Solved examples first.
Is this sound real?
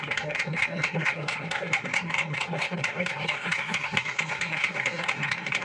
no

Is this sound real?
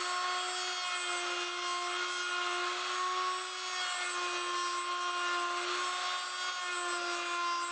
yes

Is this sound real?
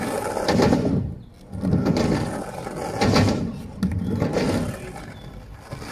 yes